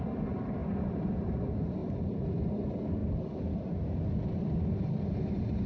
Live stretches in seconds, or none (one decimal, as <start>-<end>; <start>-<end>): 0.0-0.6; 1.4-5.7